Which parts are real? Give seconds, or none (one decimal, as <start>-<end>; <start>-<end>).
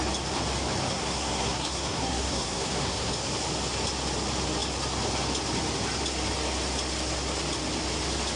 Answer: 0.0-0.9; 3.1-8.4